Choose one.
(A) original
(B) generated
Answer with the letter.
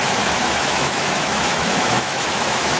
B